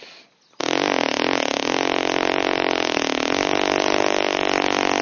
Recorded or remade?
recorded